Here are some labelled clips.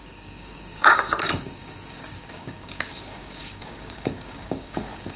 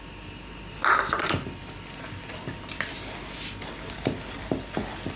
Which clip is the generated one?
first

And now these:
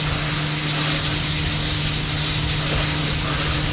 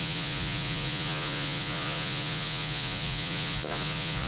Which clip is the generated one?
second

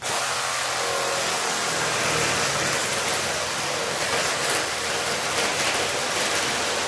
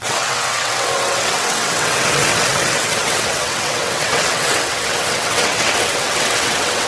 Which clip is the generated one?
second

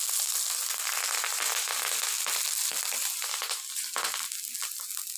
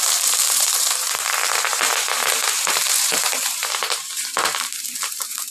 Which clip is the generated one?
second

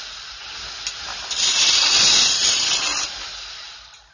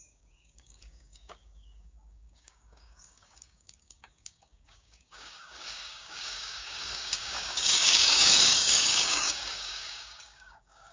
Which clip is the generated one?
second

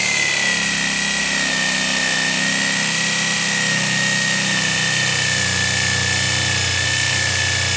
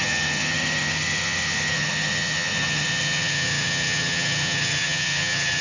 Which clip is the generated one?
second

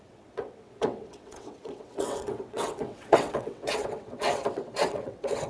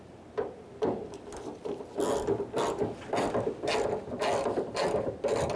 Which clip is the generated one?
first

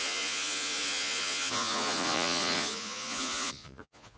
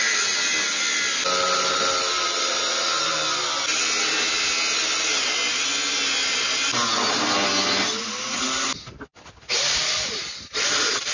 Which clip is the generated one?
first